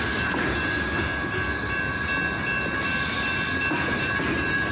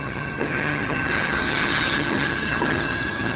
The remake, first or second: second